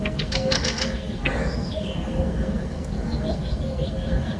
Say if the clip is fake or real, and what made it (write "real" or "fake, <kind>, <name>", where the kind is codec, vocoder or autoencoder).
fake, codec, SNAC